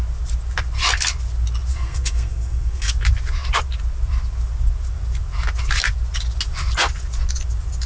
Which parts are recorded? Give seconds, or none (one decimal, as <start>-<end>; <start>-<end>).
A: 0.0-1.7; 2.9-7.9

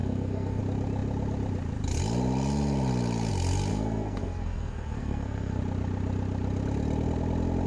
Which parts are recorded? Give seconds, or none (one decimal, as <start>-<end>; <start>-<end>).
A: 0.6-3.7; 5.6-7.7